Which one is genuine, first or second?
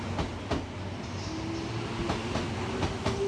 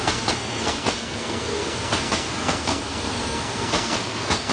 first